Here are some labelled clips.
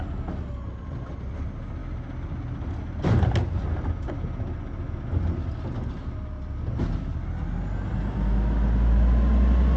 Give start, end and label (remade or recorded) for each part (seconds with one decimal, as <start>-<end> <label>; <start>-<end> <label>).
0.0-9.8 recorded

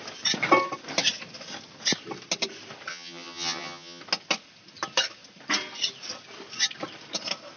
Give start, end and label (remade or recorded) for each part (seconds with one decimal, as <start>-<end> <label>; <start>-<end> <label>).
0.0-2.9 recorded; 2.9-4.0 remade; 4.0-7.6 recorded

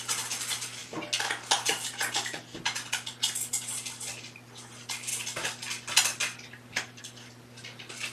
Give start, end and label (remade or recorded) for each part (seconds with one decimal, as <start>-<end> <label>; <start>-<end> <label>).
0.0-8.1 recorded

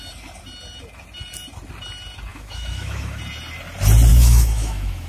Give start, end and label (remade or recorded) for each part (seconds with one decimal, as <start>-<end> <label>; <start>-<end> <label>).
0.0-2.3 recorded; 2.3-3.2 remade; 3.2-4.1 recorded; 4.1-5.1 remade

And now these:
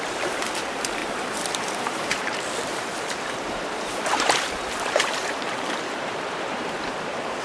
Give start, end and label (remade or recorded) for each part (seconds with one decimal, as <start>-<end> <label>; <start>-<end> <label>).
0.0-7.4 remade

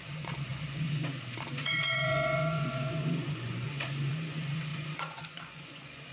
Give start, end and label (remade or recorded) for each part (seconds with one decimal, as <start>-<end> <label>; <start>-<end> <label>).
0.0-6.1 remade

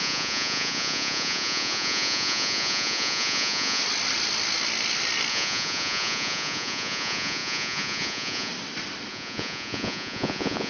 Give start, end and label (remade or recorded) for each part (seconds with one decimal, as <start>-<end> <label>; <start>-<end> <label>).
0.0-3.8 remade; 3.8-5.3 recorded; 5.3-8.5 remade; 8.5-9.1 recorded; 9.1-10.7 remade